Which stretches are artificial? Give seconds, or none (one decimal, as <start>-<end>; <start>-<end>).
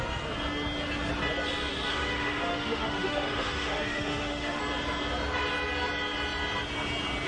1.9-4.6